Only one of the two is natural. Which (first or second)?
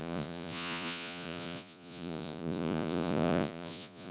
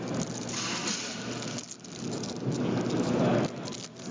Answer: second